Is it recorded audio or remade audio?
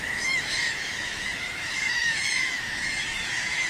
remade